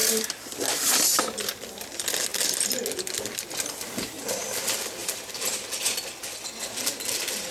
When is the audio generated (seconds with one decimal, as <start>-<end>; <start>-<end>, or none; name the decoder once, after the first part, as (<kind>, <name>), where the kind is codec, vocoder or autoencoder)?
0.0-1.2 (vocoder, BigVGAN v2); 5.0-5.6